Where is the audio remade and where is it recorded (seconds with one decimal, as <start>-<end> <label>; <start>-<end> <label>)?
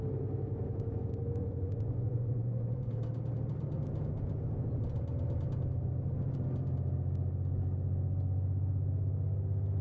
0.0-1.4 recorded; 1.4-2.9 remade; 2.9-9.8 recorded